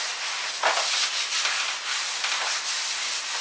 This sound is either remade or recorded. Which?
recorded